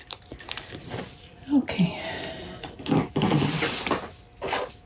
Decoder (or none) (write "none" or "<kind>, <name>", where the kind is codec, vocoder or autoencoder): none